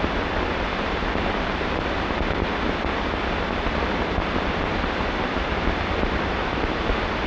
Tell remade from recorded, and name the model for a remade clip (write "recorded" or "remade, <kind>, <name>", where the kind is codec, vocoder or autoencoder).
recorded